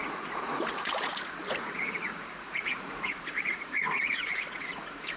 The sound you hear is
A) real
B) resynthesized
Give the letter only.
B